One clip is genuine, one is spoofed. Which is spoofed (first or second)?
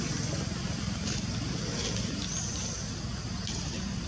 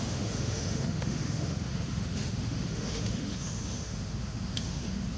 second